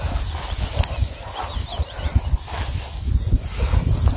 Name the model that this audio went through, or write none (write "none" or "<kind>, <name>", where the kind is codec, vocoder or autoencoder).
none